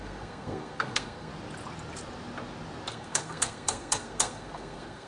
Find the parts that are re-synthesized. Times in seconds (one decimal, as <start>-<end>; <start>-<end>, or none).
0.0-1.3; 2.9-5.1